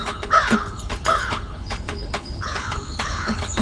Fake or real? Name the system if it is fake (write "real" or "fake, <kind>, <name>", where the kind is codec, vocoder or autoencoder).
fake, codec, HILCodec